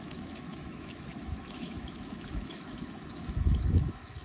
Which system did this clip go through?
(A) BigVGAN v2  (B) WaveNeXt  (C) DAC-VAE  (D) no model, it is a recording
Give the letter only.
C